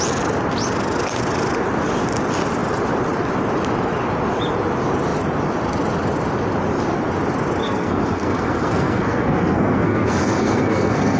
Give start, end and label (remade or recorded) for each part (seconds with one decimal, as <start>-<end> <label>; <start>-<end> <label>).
0.0-7.6 recorded; 7.6-11.2 remade

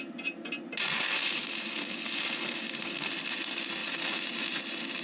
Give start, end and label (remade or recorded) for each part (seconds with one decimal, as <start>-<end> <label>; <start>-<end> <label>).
0.0-5.0 recorded